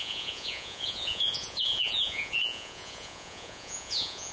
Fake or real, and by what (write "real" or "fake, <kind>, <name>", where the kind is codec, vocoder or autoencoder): fake, vocoder, Vocos